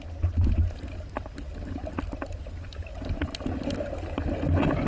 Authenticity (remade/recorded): recorded